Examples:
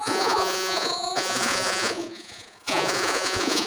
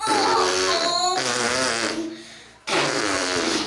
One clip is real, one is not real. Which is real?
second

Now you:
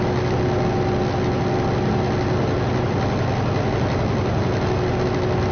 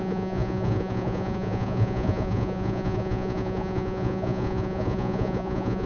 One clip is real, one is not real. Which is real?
first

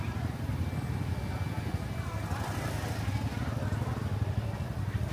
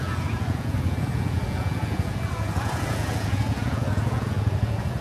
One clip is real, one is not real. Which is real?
first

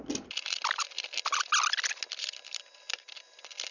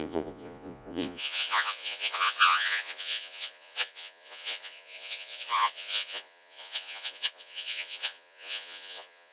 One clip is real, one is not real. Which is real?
first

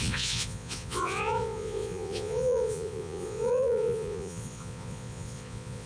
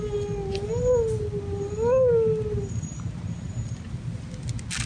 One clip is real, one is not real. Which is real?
second